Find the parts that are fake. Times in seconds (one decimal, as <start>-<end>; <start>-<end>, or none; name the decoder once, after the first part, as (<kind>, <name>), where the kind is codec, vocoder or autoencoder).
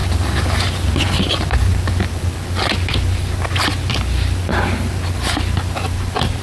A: none